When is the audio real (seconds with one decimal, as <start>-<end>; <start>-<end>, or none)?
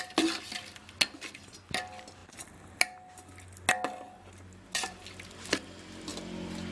0.0-6.7